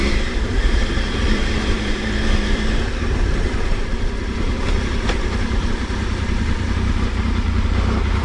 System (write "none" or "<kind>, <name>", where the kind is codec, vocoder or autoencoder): vocoder, BigVGAN v2